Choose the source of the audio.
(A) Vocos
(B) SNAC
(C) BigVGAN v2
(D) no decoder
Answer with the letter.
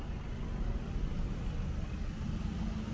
D